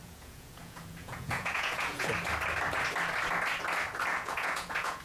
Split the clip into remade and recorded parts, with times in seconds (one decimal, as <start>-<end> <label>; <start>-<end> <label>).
0.0-2.1 remade; 2.1-4.1 recorded; 4.1-5.0 remade